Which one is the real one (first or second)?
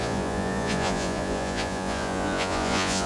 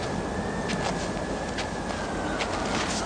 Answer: second